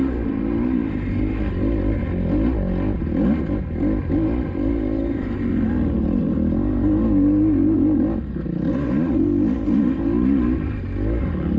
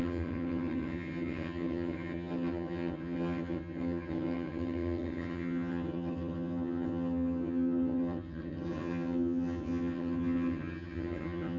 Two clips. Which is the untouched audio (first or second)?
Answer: first